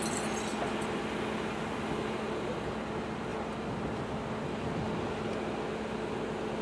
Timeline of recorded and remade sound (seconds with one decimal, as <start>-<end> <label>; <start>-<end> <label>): 0.0-6.6 recorded